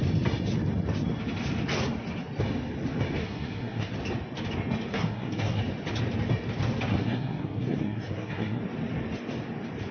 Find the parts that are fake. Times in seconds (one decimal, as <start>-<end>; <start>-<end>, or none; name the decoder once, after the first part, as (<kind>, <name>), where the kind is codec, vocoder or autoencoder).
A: 3.2-3.9 (codec, SNAC); 4.9-5.6; 6.9-8.6